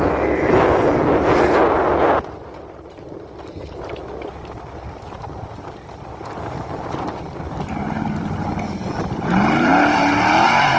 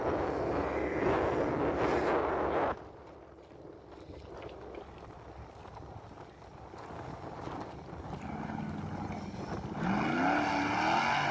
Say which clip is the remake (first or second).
first